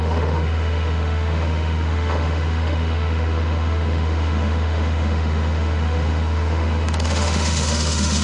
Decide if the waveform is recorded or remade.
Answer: remade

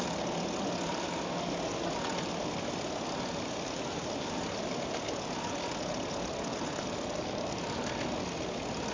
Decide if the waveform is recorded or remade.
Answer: recorded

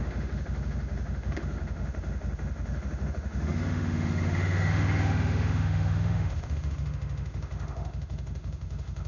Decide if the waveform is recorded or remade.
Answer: remade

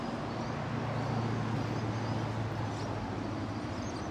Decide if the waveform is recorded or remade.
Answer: recorded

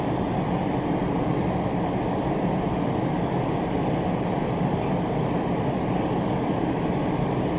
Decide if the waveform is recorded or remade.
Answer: recorded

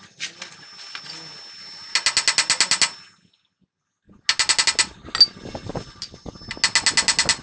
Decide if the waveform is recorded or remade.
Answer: recorded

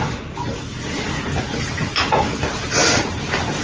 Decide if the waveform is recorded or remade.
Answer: recorded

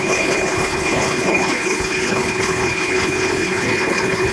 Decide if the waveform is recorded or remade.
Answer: remade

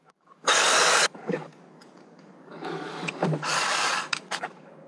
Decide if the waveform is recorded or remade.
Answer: remade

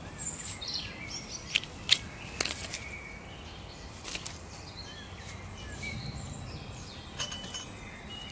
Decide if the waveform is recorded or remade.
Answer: recorded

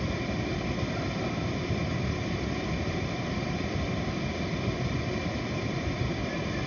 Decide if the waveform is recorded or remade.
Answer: remade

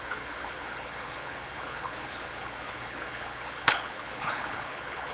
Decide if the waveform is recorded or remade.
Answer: remade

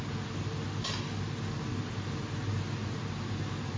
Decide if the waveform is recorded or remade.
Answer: recorded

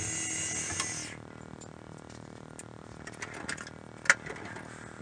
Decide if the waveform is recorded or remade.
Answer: recorded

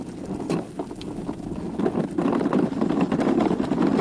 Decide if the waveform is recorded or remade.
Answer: recorded